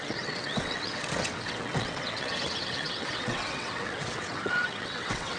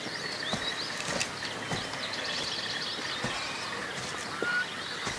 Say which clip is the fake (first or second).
first